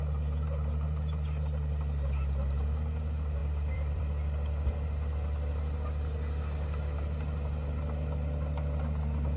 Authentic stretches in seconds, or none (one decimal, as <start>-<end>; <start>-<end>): 0.0-3.4; 4.0-9.4